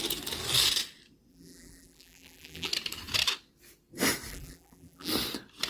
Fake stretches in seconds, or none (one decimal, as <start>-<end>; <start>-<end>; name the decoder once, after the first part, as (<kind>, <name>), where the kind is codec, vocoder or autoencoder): 1.3-2.7 (vocoder, BigVGAN v2); 4.3-5.1